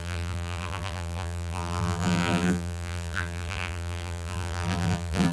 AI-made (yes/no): yes